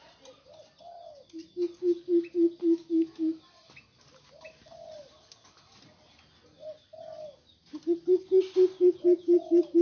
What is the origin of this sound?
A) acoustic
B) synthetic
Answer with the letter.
A